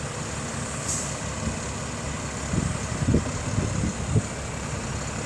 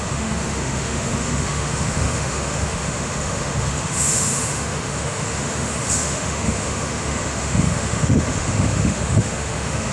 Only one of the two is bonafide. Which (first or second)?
first